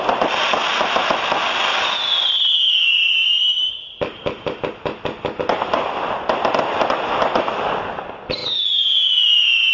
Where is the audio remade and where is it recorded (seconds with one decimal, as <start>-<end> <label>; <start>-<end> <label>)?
0.0-8.4 recorded; 8.4-9.7 remade